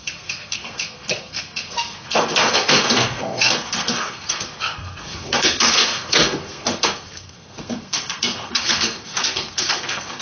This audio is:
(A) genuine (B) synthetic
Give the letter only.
B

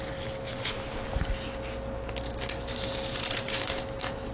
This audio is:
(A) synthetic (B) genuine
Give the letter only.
B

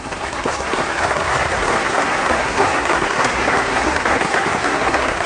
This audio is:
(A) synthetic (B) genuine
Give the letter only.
A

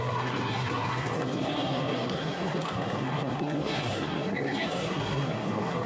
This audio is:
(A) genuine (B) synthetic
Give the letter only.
B